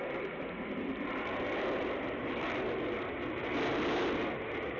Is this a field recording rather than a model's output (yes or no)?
yes